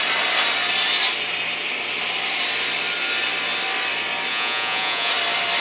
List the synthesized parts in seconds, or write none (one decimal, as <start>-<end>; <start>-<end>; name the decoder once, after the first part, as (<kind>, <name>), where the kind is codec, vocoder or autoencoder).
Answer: 4.3-5.1 (vocoder, Vocos)